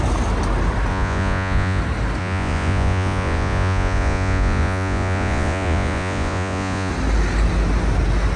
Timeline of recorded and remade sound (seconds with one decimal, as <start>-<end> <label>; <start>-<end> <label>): 0.0-0.9 recorded; 0.9-1.8 remade; 1.8-2.2 recorded; 2.2-6.9 remade; 6.9-8.4 recorded